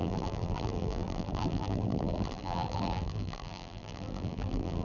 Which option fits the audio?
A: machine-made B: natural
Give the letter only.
A